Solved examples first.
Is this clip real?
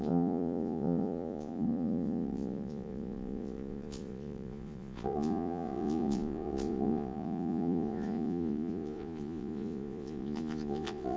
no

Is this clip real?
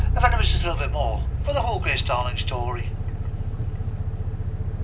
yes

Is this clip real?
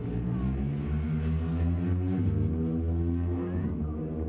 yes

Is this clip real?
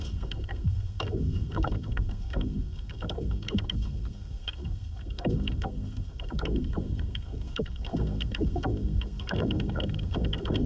no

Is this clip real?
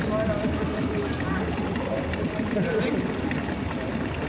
yes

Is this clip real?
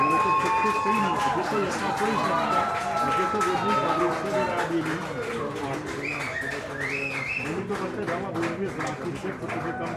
yes